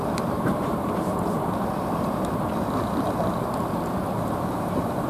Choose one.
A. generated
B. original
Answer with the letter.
A